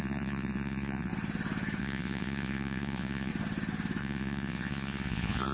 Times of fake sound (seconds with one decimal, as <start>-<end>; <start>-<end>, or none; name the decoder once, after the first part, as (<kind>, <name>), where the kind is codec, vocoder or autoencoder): 0.0-1.1 (vocoder, Vocos); 1.8-3.3; 4.0-5.5